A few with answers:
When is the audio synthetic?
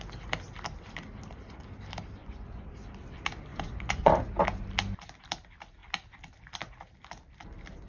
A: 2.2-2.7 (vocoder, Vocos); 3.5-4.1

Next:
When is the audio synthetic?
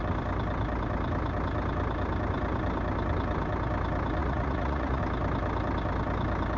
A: 4.2-5.0 (vocoder, Vocos)